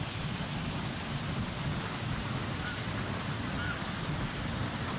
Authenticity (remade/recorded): recorded